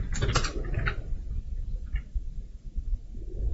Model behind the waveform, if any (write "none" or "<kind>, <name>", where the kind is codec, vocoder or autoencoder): none